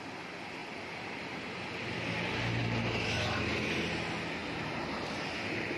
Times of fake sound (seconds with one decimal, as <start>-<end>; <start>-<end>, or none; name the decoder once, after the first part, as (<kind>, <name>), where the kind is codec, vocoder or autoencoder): none